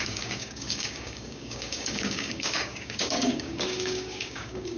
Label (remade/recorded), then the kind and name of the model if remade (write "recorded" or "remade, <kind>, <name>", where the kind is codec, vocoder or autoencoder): remade, codec, DAC